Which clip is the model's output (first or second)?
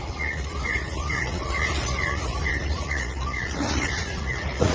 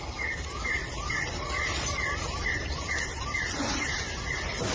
first